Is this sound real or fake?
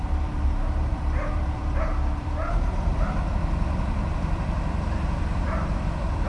fake